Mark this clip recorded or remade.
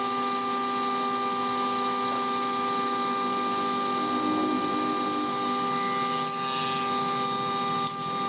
recorded